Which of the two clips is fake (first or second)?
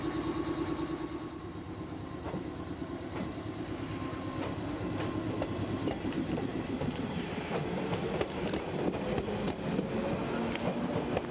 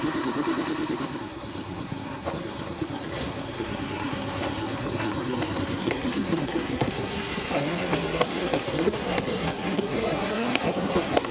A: second